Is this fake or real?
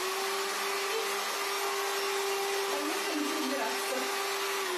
real